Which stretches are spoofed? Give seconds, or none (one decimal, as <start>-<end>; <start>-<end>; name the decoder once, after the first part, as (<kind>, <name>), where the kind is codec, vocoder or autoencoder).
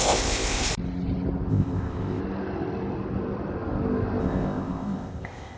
0.0-0.7 (codec, ZipCodec); 1.5-2.2; 4.2-5.6